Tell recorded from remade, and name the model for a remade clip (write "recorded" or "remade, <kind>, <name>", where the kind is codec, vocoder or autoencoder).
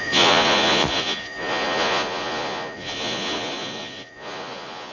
remade, vocoder, Vocos